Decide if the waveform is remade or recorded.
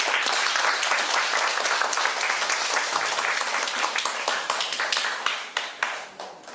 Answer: recorded